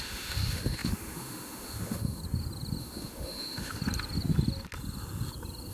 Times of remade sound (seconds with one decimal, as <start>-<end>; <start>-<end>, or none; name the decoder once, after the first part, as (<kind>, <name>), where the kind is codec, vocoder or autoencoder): 0.0-2.2 (autoencoder, DAC-VAE); 2.8-3.8